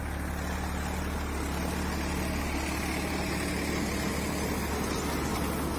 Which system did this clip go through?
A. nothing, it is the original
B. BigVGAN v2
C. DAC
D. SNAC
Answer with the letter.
A